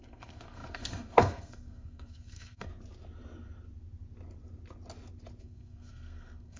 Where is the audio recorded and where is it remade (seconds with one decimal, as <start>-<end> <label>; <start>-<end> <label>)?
0.0-2.7 remade; 2.7-5.4 recorded; 5.4-6.6 remade